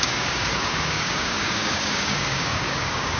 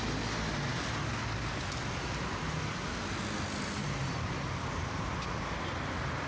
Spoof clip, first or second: first